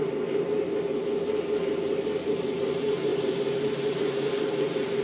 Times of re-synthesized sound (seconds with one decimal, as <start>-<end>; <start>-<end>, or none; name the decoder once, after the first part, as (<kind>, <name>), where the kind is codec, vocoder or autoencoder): none